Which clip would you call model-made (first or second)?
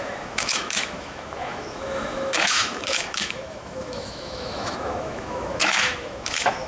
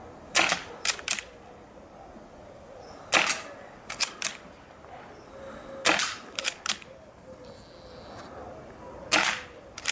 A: first